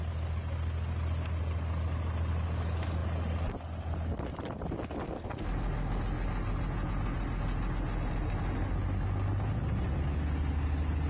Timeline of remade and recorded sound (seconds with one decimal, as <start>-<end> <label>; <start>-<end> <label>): 0.0-11.1 recorded